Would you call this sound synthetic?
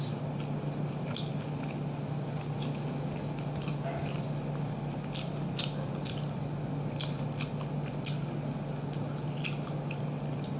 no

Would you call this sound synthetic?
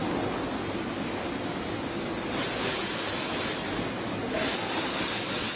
no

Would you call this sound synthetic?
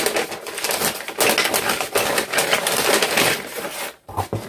no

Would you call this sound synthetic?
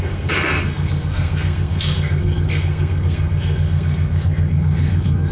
yes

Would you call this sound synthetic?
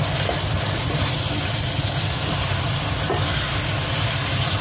no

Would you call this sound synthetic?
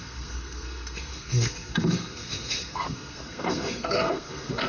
yes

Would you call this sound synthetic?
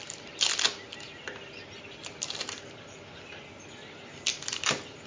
no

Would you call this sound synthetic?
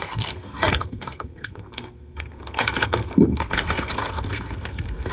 yes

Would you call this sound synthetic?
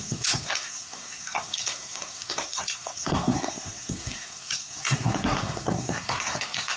yes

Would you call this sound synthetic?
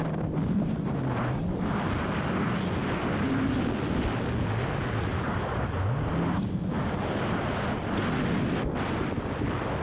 no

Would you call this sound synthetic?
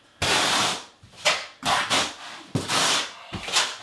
no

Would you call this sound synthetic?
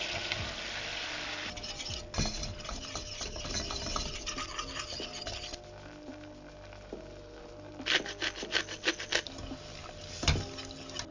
no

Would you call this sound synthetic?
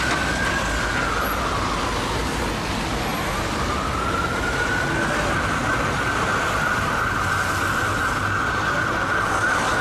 no